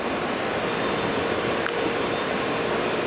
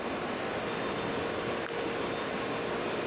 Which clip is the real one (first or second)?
second